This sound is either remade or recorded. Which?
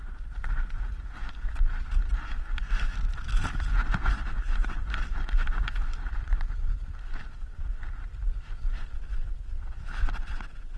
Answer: recorded